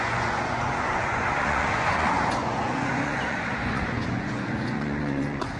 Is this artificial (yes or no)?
yes